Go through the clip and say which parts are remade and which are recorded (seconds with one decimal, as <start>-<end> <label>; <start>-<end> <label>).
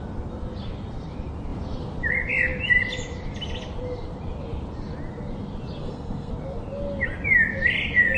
0.0-5.8 recorded; 5.8-6.3 remade; 6.3-8.2 recorded